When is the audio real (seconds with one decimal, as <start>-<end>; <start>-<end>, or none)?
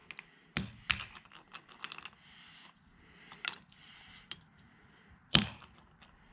0.0-2.9; 5.8-6.3